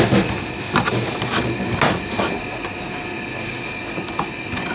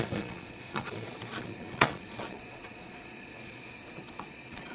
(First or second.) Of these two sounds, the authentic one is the first